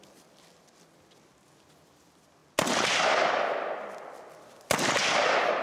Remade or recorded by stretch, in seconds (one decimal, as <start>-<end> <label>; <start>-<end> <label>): 0.0-5.6 recorded